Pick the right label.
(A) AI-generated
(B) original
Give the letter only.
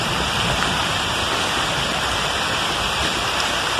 B